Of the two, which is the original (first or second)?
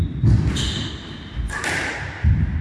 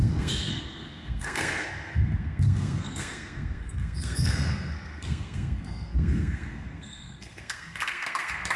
first